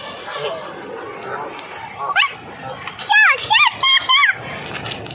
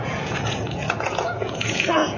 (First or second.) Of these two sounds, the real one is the first